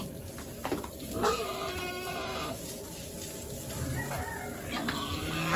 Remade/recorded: recorded